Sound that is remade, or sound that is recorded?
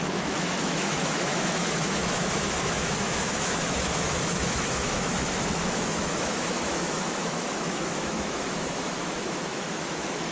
remade